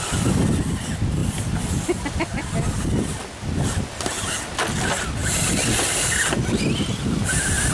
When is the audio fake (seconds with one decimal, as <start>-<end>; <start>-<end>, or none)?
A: none